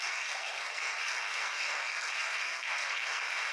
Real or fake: fake